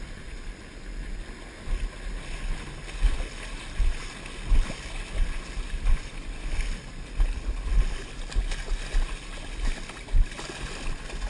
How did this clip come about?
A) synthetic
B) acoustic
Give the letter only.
B